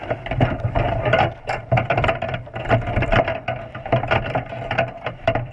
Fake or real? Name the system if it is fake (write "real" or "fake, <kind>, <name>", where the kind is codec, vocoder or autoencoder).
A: fake, vocoder, BigVGAN v2